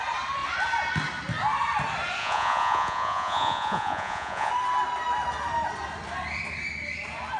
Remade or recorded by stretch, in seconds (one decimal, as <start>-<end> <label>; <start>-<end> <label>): 0.0-2.2 recorded; 2.2-4.5 remade; 4.5-7.4 recorded